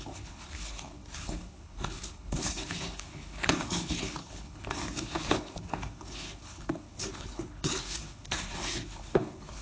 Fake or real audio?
fake